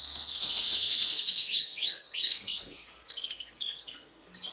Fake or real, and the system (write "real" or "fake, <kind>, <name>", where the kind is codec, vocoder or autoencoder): fake, codec, SNAC